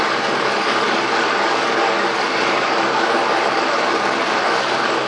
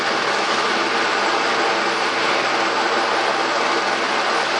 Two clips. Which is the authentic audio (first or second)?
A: second